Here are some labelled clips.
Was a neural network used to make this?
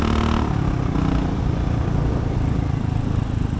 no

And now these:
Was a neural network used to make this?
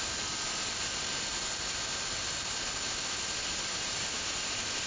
no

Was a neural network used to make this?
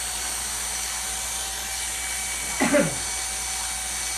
no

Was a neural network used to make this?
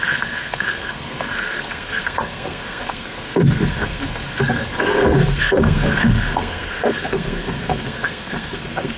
yes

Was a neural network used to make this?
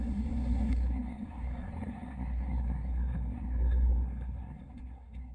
yes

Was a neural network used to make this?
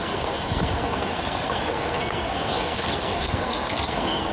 yes